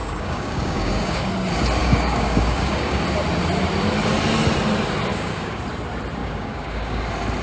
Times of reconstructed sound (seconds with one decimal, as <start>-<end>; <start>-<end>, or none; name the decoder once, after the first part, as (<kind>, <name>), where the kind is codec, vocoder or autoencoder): 0.0-1.3 (codec, DAC); 1.8-3.0; 5.1-5.6; 6.2-7.0

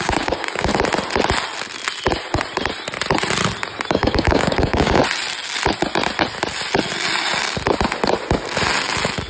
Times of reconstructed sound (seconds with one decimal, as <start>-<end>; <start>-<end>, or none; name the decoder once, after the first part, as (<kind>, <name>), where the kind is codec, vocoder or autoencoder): 0.0-0.7 (codec, DAC); 3.9-5.0

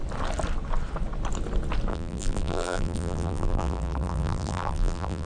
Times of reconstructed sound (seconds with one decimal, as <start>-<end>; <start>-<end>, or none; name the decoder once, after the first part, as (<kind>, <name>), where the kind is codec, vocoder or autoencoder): 1.9-5.3 (vocoder, BigVGAN v2)